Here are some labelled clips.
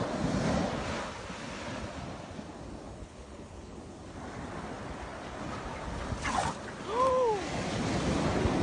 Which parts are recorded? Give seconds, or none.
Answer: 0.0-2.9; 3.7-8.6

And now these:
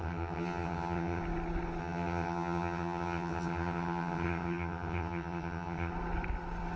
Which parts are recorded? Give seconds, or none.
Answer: 1.2-1.8; 5.9-6.8

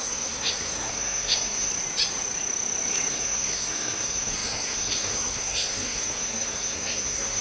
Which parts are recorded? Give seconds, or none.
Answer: 1.7-3.1

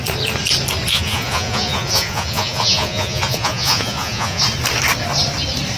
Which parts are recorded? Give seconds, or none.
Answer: 0.0-0.9; 4.4-5.8

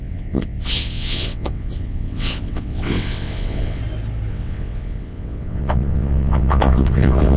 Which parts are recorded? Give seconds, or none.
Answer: 3.8-4.3

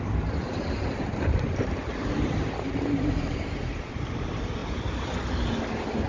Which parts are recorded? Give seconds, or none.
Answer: 0.0-0.4; 4.0-6.1

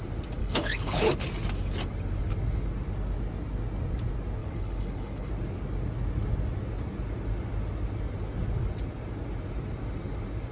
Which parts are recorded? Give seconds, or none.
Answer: 0.0-0.4; 1.1-4.4; 5.3-10.5

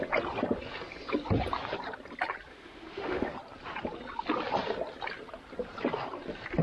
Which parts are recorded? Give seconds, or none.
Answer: 0.0-2.5; 3.3-6.6